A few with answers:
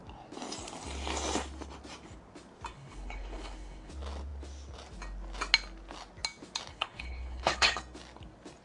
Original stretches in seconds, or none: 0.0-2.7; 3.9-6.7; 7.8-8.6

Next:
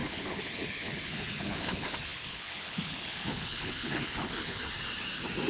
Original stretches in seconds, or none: 4.6-5.5